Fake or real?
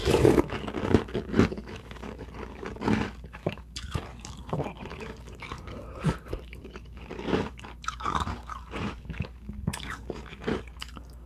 fake